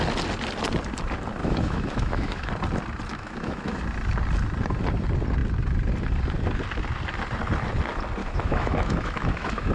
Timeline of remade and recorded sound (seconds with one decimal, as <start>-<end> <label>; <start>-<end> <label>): 0.0-1.4 recorded; 1.4-2.5 remade; 2.5-3.1 recorded; 3.1-3.8 remade; 3.8-8.2 recorded; 8.2-9.7 remade